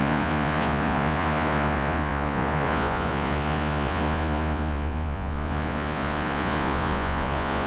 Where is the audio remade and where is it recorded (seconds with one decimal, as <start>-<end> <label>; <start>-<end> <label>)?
0.0-7.7 remade